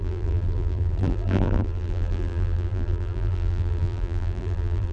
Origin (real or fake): fake